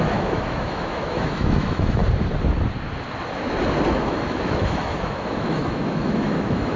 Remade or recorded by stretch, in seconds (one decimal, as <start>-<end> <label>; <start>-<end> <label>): 0.0-2.0 remade; 2.0-3.9 recorded; 3.9-6.8 remade